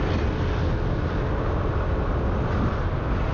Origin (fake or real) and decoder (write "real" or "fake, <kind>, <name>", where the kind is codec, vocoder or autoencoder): real